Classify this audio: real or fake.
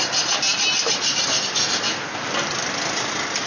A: real